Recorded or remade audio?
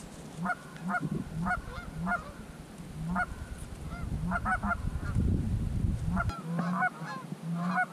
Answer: recorded